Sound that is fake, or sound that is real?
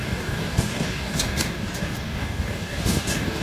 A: fake